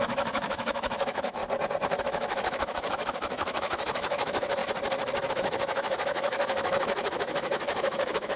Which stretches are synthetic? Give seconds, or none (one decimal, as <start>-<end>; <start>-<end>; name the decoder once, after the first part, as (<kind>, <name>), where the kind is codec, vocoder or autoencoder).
0.0-1.4 (autoencoder, DAC-VAE); 2.0-4.6; 5.3-8.4